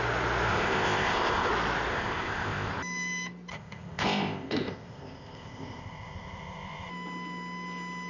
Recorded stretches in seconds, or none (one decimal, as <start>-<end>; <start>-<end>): 0.0-0.5; 1.5-1.9; 2.7-3.5; 6.9-8.1